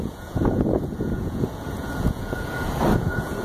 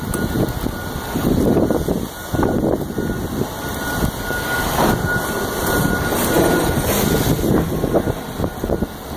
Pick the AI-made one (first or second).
first